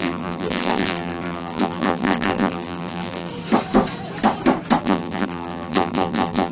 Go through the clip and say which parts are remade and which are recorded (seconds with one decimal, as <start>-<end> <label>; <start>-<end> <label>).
0.0-3.3 remade; 3.3-4.8 recorded; 4.8-6.5 remade